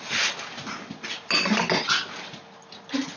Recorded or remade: recorded